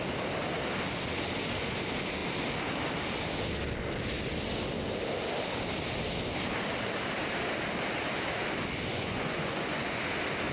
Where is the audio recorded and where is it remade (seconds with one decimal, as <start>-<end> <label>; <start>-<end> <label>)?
0.0-8.9 recorded; 8.9-10.0 remade; 10.0-10.5 recorded